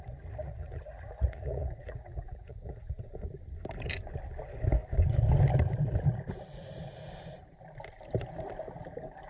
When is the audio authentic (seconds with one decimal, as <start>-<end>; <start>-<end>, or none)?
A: 0.0-0.4; 3.1-9.3